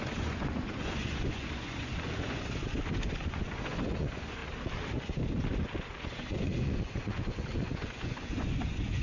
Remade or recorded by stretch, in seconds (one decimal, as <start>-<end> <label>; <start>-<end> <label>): 0.0-4.4 remade; 4.4-6.0 recorded; 6.0-9.0 remade